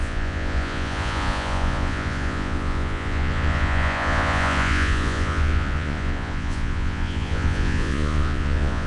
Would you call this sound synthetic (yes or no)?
yes